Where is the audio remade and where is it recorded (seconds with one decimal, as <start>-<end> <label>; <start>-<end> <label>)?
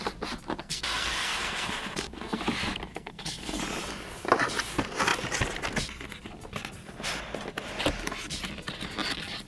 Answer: 0.0-0.6 recorded; 0.6-2.4 remade; 2.4-2.9 recorded; 2.9-3.6 remade; 3.6-9.5 recorded